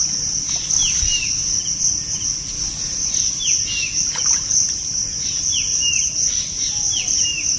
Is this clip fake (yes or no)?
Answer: no